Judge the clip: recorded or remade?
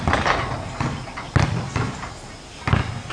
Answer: recorded